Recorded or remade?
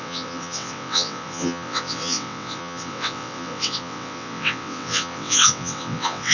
remade